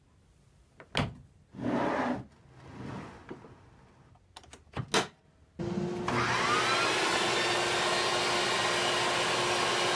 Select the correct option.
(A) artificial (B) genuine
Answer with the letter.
B